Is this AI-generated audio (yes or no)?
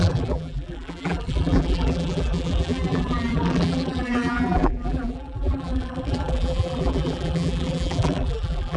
yes